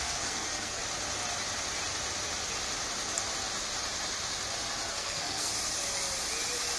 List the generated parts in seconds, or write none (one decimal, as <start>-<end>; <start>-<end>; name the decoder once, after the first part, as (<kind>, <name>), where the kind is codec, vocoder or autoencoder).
0.0-0.8 (codec, SNAC); 4.9-5.5